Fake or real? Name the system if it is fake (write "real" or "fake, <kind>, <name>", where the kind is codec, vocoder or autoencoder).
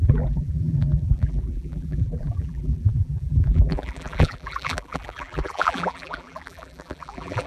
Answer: fake, vocoder, BigVGAN v2